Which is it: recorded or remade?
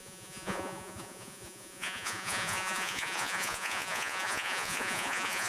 remade